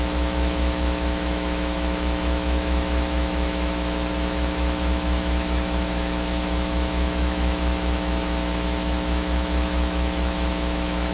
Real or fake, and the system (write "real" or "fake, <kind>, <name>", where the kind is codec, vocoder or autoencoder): fake, autoencoder, DAC-VAE